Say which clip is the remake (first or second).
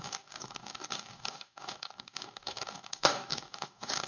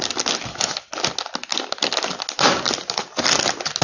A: first